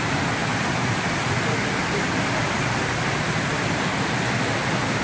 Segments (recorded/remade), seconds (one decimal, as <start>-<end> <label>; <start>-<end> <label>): 0.0-0.5 recorded; 0.5-1.1 remade; 1.1-3.5 recorded; 3.5-4.1 remade; 4.1-5.0 recorded